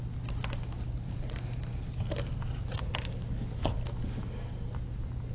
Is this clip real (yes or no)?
yes